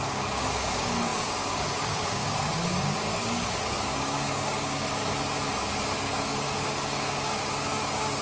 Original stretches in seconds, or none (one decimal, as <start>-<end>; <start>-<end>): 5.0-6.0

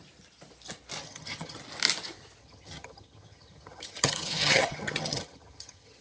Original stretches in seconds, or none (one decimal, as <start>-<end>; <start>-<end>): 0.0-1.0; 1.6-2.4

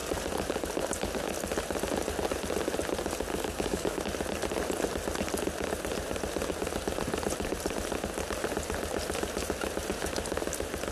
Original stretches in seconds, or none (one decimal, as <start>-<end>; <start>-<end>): 0.0-3.3; 4.0-10.9